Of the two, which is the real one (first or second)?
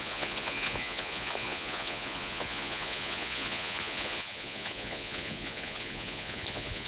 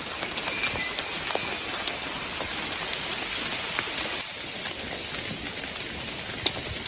second